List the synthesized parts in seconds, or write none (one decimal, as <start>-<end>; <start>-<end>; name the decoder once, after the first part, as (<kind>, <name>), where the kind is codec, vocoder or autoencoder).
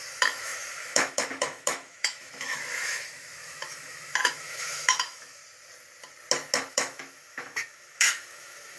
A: 0.0-5.4 (autoencoder, DAC-VAE); 6.7-8.8